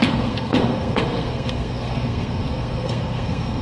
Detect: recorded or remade remade